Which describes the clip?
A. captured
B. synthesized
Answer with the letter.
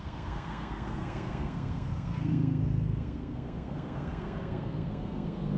B